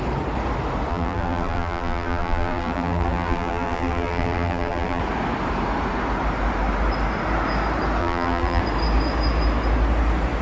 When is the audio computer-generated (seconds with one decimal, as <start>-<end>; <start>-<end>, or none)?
0.9-5.0; 8.0-8.6